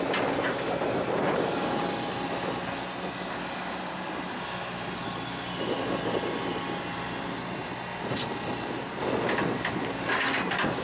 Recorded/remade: recorded